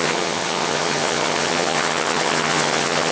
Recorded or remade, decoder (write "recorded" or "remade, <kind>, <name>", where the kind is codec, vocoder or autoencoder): remade, vocoder, HiFi-GAN